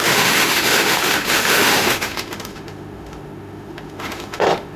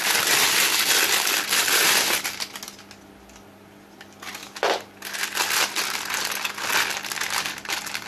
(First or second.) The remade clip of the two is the first